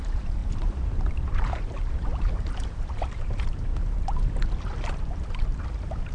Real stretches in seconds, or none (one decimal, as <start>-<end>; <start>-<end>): 0.4-1.1; 3.7-5.0